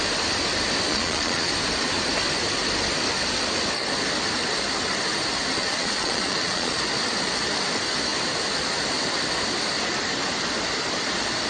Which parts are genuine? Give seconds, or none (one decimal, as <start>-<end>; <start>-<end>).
0.0-0.9; 1.5-5.6; 6.8-11.5